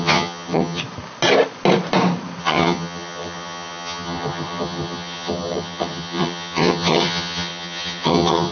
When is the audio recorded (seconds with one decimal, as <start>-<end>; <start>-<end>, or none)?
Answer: 0.8-2.4